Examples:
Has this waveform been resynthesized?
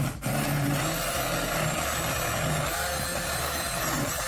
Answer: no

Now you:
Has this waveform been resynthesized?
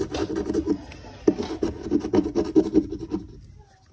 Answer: no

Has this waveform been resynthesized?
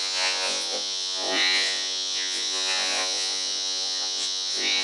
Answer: yes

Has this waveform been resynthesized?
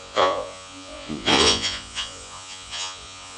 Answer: yes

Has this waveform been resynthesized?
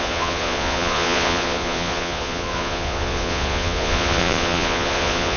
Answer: yes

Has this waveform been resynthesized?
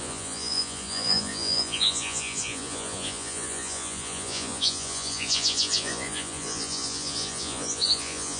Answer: yes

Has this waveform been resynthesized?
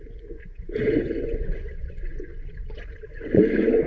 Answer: yes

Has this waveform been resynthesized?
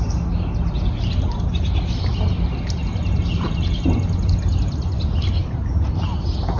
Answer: no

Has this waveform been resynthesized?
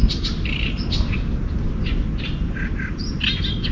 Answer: no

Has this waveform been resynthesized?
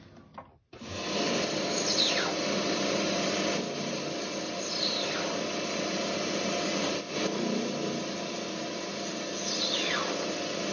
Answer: no